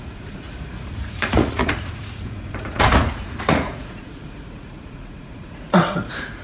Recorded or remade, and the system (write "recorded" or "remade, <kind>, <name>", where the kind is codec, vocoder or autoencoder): remade, vocoder, Vocos